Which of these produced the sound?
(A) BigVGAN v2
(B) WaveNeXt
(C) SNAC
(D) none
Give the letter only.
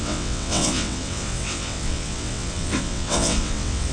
B